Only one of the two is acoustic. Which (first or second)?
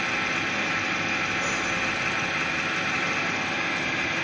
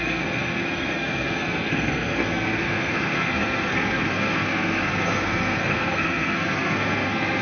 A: first